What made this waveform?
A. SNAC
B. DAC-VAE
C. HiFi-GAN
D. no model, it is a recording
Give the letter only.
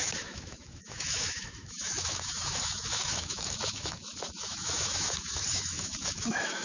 B